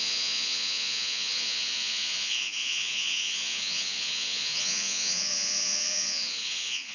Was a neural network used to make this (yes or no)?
yes